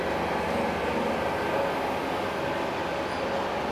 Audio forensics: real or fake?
real